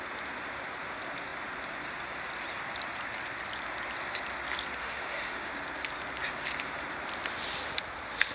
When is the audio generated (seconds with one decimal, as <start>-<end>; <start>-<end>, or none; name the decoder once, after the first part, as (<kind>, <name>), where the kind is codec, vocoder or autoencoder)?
4.8-5.5 (autoencoder, DAC-VAE)